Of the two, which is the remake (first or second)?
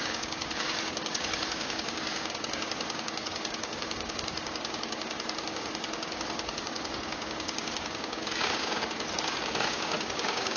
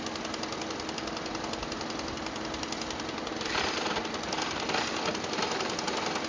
first